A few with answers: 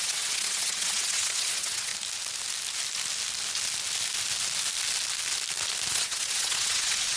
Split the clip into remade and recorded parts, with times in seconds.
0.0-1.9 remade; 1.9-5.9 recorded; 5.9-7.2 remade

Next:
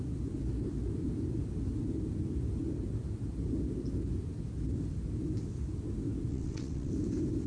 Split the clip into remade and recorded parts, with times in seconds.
0.0-6.3 recorded; 6.3-6.9 remade; 6.9-7.5 recorded

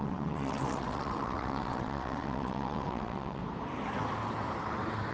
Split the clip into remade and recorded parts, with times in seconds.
0.0-3.4 remade; 3.4-5.1 recorded